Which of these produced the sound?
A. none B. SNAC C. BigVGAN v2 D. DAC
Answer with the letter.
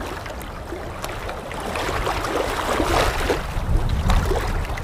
A